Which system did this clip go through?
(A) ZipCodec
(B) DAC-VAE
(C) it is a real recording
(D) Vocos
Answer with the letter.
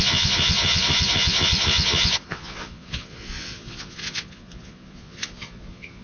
D